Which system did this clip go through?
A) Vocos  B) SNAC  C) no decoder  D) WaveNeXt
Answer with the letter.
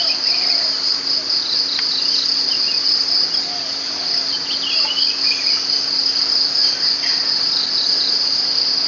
C